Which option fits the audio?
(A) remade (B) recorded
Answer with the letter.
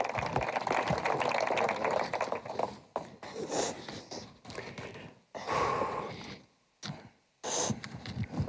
B